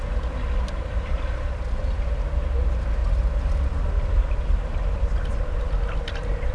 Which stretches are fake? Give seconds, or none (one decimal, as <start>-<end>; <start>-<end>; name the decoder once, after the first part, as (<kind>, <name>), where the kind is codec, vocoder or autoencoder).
none